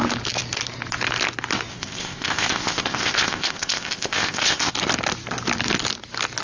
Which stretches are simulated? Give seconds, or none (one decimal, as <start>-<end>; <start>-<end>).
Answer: 1.7-4.7